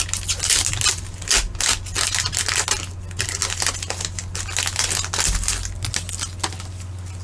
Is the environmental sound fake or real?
real